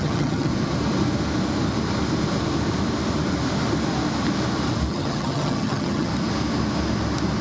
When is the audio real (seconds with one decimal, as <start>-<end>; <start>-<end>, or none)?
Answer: 0.5-4.9; 6.1-7.4

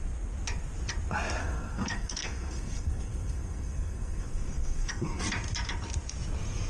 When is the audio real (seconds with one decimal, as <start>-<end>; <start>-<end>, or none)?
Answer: 0.0-1.4; 5.2-6.7

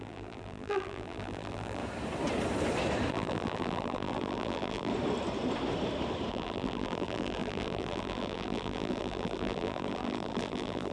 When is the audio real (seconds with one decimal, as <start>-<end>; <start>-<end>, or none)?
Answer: 1.8-3.1; 4.9-6.3

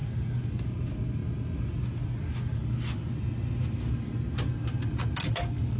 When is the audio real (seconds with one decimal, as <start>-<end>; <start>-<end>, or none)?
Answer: 0.0-5.8

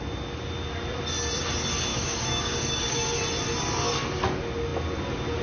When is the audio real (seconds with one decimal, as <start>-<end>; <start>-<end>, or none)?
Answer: 0.0-1.9; 3.2-5.4

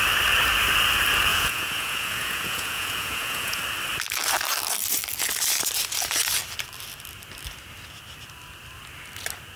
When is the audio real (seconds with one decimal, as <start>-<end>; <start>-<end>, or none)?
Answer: 0.0-1.3; 3.6-9.6